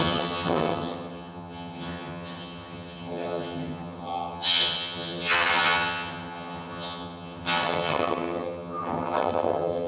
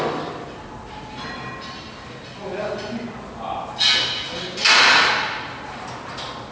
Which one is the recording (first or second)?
second